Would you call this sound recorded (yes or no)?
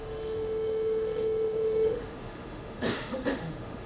no